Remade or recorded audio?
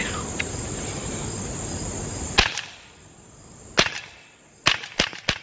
recorded